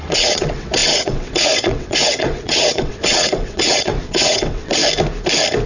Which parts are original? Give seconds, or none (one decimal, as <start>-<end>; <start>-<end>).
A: 4.8-5.7